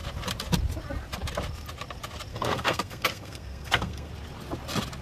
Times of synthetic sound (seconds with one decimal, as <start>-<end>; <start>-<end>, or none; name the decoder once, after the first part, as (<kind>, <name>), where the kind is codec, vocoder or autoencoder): 2.3-4.1 (codec, SNAC)